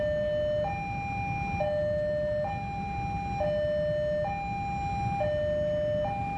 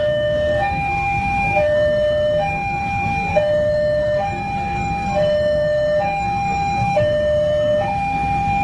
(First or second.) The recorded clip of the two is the first